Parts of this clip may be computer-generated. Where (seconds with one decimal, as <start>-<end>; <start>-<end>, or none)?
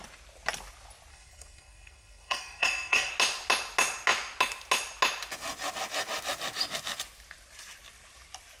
1.1-3.1